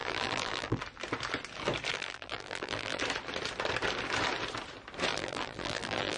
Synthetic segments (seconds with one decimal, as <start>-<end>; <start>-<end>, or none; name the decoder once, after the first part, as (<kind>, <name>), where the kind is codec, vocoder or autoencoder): 0.0-0.8 (vocoder, BigVGAN v2); 1.9-3.0; 5.1-6.2